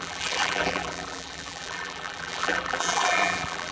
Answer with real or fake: fake